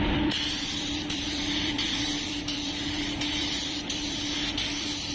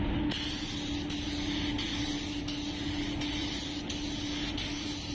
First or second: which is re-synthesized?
first